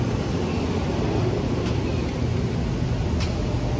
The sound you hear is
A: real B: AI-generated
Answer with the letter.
A